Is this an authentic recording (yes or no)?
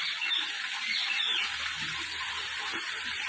yes